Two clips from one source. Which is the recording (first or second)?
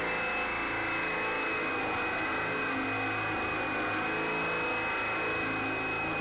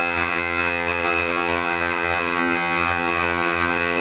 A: first